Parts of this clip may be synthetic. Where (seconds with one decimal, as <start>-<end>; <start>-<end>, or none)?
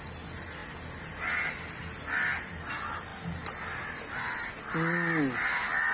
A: none